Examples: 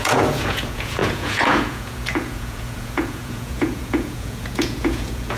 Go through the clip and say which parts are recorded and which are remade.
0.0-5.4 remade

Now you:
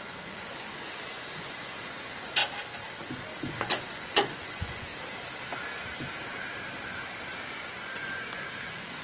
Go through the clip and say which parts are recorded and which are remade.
0.0-2.4 remade; 2.4-3.5 recorded; 3.5-4.9 remade; 4.9-7.5 recorded; 7.5-9.0 remade

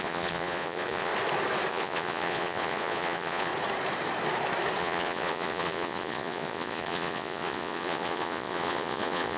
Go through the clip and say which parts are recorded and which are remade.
0.0-1.1 remade; 1.1-1.7 recorded; 1.7-3.5 remade; 3.5-4.8 recorded; 4.8-9.4 remade

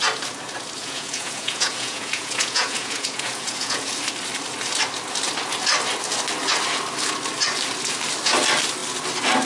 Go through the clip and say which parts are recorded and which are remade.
0.0-0.8 recorded; 0.8-3.9 remade; 3.9-9.5 recorded

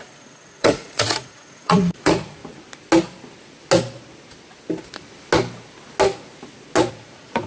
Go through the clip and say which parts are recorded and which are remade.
0.0-2.4 remade; 2.4-6.9 recorded; 6.9-7.5 remade

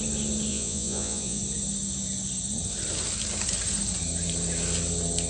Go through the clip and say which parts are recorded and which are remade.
0.0-0.5 recorded; 0.5-1.4 remade; 1.4-5.3 recorded

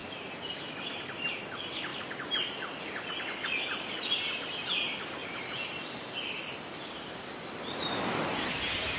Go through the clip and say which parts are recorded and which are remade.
0.0-9.0 recorded

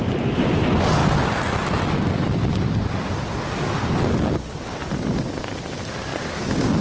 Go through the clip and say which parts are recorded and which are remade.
0.0-6.8 recorded